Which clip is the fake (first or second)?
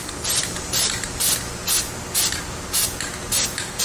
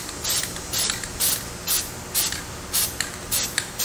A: second